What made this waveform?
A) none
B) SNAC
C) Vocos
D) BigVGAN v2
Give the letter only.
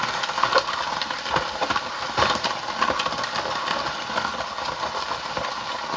A